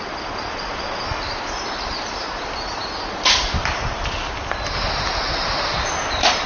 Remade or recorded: recorded